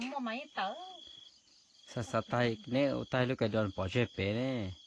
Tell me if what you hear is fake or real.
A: real